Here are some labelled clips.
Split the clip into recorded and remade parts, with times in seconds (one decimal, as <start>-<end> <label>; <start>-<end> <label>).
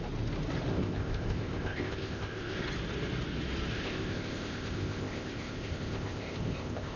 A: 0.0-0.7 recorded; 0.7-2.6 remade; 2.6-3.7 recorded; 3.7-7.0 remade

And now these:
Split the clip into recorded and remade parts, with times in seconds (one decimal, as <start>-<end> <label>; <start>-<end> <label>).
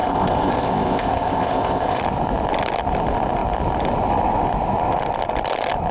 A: 0.0-2.0 remade; 2.0-5.9 recorded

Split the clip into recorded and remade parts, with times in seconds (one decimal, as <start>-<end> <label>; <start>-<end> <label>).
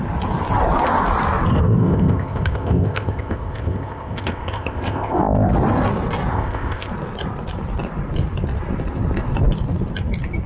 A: 0.0-1.5 recorded; 1.5-5.5 remade; 5.5-6.3 recorded; 6.3-6.9 remade; 6.9-10.5 recorded